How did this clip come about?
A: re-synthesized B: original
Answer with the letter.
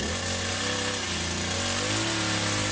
B